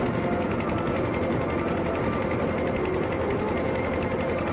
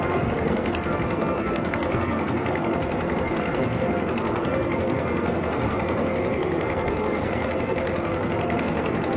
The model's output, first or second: second